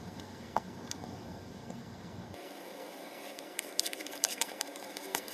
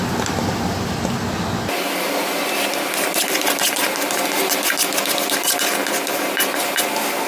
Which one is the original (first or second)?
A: second